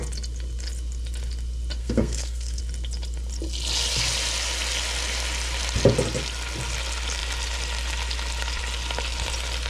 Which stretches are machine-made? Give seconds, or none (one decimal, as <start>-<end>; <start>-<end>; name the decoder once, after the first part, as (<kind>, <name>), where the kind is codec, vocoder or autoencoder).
1.8-2.6 (codec, SNAC)